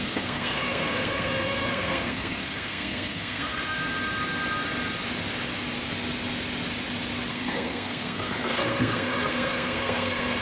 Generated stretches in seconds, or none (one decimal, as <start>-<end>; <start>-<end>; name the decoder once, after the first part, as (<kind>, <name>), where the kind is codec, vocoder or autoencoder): 0.0-3.8 (codec, SNAC); 7.3-10.4